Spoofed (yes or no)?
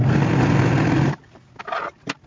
no